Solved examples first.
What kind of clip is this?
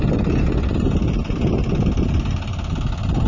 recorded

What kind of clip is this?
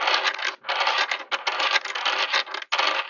recorded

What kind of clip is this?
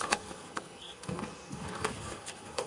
remade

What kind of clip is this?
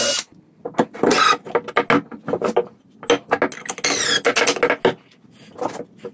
recorded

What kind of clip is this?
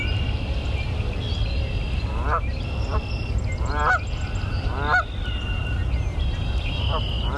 recorded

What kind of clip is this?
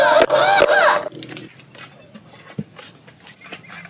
recorded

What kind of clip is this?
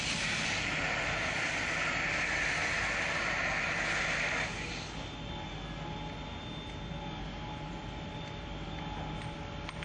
recorded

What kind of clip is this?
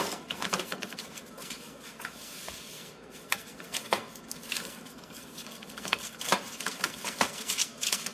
remade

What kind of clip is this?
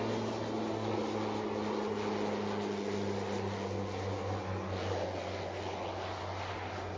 recorded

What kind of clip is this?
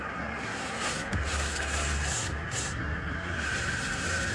remade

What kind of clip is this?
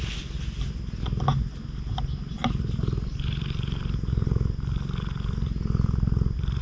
recorded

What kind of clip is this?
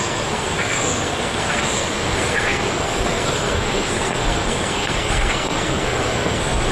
remade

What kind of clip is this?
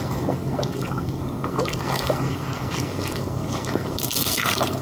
remade